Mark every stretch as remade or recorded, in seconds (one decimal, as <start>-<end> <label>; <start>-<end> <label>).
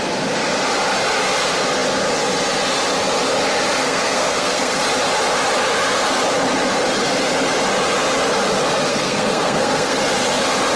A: 0.0-3.8 recorded; 3.8-4.8 remade; 4.8-8.9 recorded; 8.9-10.0 remade; 10.0-10.8 recorded